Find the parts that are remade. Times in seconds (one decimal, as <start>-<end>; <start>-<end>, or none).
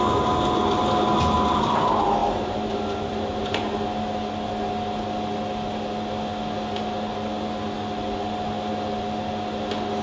none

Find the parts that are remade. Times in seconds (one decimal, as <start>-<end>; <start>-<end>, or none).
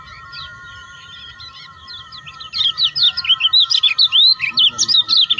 none